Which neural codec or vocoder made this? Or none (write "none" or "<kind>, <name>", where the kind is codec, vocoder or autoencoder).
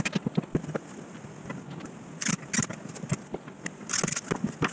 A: none